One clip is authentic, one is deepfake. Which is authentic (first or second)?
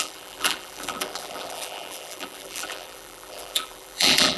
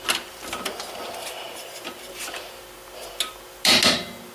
second